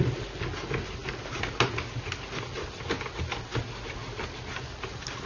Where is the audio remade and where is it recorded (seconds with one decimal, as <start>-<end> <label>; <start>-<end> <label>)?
0.0-5.3 recorded